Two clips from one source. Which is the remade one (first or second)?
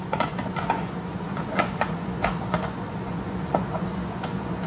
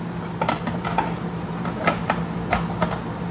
first